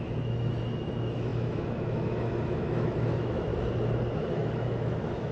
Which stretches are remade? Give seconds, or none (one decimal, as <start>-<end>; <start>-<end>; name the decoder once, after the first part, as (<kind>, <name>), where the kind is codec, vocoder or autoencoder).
0.0-3.5 (autoencoder, DAC-VAE); 4.3-5.3